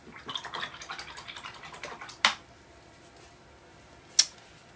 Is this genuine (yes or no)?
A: yes